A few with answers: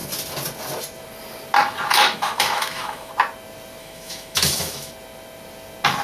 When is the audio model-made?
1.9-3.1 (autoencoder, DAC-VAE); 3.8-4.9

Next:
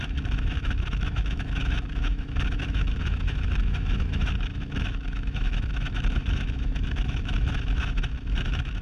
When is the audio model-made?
0.0-8.8 (autoencoder, DAC-VAE)

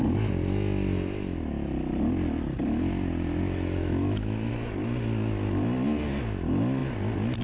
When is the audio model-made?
3.8-4.5 (autoencoder, DAC-VAE)

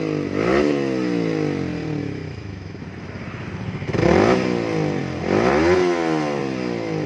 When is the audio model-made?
2.0-2.8 (autoencoder, DAC-VAE)

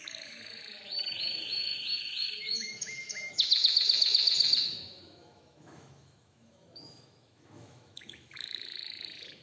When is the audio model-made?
0.0-9.4 (autoencoder, DAC-VAE)

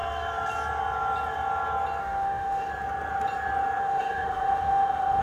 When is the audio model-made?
2.0-2.7 (autoencoder, DAC-VAE); 3.8-5.2